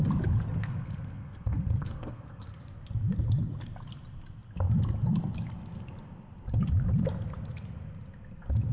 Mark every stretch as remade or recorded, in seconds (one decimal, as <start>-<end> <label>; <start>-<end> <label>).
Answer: 0.0-0.5 recorded; 0.5-2.6 remade; 2.6-8.7 recorded